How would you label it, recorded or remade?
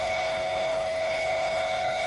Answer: remade